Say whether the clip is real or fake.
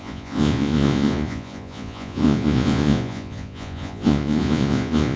fake